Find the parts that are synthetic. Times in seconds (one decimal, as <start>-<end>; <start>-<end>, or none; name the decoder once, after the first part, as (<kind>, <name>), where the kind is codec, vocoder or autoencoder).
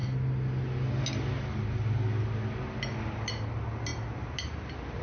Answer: none